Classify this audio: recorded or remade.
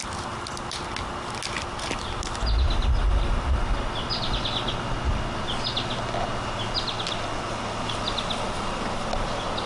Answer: recorded